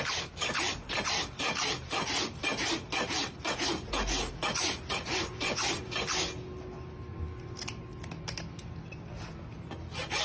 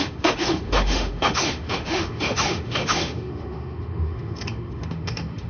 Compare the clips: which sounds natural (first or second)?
first